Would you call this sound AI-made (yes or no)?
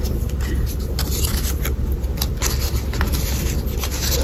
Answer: no